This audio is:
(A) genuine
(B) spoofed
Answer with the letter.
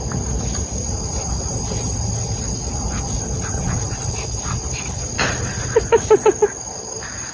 A